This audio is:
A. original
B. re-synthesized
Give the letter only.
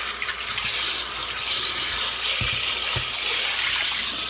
A